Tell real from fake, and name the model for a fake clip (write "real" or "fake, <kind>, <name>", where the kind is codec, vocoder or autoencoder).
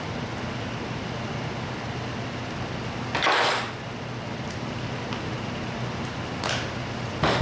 real